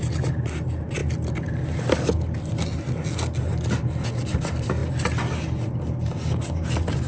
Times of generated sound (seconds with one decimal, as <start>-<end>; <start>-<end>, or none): none